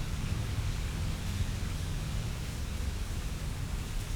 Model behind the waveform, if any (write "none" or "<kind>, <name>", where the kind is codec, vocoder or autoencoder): codec, DAC